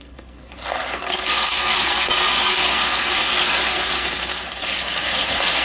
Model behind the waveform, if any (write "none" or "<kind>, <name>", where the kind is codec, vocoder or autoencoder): codec, SNAC